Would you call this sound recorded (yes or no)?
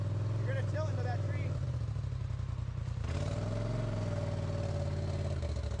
yes